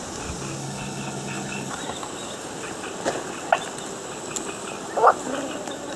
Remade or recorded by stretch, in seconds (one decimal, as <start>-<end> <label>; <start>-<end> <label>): 0.0-0.6 recorded; 0.6-1.7 remade; 1.7-6.0 recorded